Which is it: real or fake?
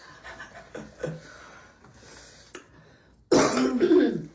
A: real